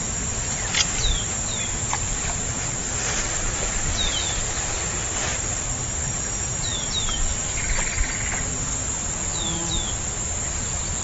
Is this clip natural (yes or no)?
yes